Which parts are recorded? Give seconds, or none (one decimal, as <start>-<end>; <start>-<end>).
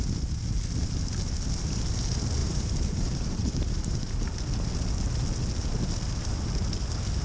0.0-2.4; 4.1-7.2